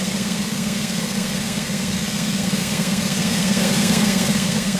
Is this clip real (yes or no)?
no